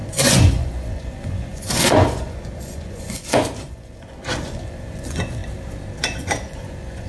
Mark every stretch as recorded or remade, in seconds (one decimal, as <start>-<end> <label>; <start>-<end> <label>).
0.0-5.4 remade; 5.4-6.0 recorded; 6.0-7.1 remade